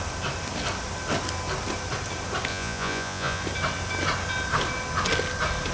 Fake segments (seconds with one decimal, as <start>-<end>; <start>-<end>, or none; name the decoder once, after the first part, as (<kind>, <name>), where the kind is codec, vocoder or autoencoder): 2.5-3.4 (vocoder, Vocos)